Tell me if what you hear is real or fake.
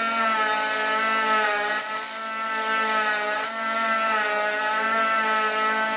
real